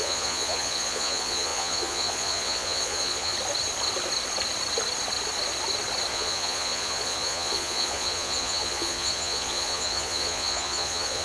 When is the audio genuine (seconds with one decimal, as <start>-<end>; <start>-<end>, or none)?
3.3-6.1